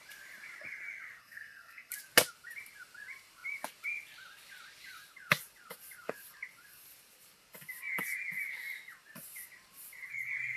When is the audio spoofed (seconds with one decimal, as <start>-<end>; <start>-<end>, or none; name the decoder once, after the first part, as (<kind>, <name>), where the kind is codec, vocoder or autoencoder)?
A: 1.2-1.9 (codec, SNAC)